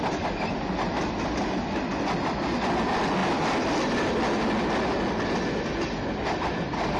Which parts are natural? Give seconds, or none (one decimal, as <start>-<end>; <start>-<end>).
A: 0.0-7.0